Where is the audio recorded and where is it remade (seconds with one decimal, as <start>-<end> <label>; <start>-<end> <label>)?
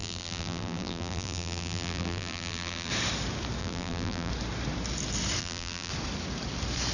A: 0.0-2.9 remade; 2.9-3.6 recorded; 3.6-4.3 remade; 4.3-5.4 recorded; 5.4-5.9 remade; 5.9-6.9 recorded